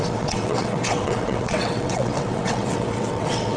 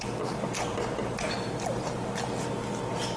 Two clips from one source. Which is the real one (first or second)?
second